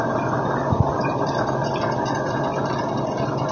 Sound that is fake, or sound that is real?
real